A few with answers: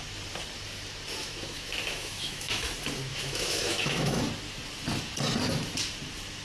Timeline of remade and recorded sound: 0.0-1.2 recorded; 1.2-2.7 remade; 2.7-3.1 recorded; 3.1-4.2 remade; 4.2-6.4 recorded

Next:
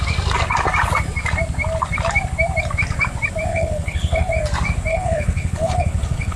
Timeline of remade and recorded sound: 0.0-3.5 recorded; 3.5-4.3 remade; 4.3-4.9 recorded; 4.9-6.4 remade